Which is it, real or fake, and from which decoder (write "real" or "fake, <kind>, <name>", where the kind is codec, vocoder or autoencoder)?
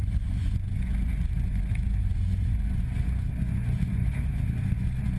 fake, vocoder, Vocos